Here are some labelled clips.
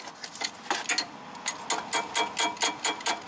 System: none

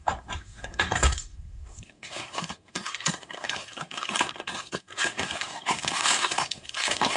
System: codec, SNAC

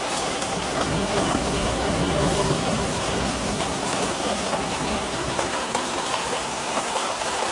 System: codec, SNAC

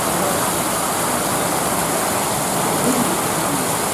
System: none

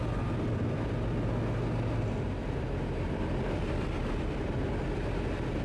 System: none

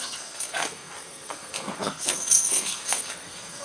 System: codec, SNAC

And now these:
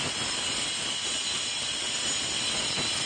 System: none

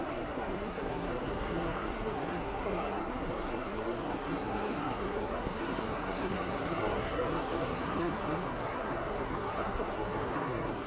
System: codec, SNAC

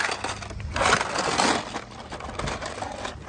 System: none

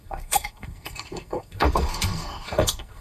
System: codec, SNAC